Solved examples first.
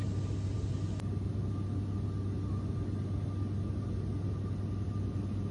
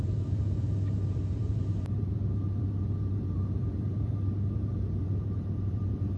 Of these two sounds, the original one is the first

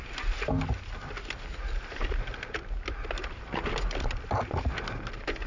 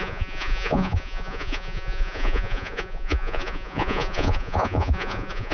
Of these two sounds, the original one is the first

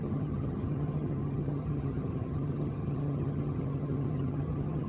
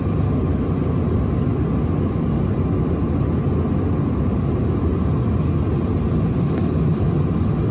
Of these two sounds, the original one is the second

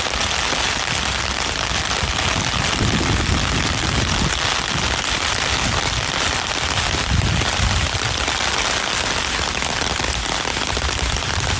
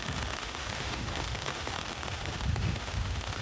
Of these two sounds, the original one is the first